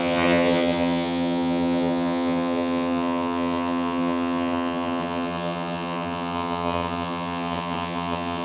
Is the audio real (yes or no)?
no